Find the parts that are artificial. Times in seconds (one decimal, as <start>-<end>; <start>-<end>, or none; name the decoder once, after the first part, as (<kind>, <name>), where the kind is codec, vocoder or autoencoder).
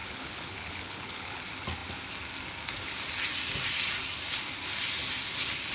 0.0-1.4 (codec, HILCodec)